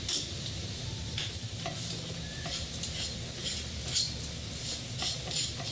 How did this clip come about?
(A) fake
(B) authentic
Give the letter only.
A